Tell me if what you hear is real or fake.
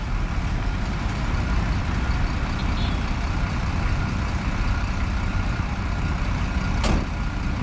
real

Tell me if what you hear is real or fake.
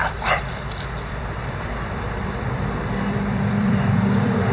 fake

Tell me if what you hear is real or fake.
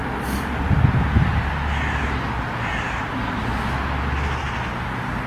real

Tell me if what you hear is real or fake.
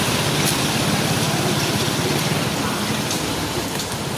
fake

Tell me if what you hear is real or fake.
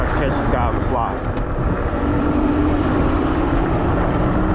fake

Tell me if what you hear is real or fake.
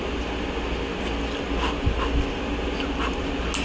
real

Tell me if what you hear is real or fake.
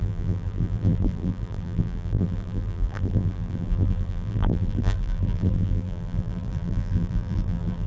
fake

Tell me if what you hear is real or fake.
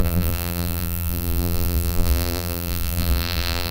fake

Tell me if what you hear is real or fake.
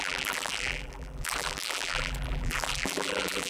fake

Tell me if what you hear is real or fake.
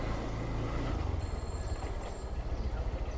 real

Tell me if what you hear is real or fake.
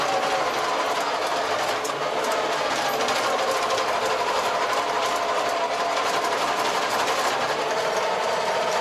real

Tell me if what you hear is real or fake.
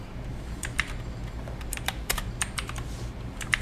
fake